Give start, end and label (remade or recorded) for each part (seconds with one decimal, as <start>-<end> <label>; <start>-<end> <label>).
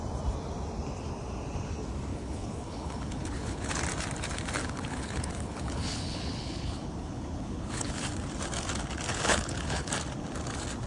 0.0-2.1 recorded; 2.1-3.8 remade; 3.8-4.6 recorded; 4.6-7.9 remade; 7.9-9.1 recorded; 9.1-9.9 remade; 9.9-10.9 recorded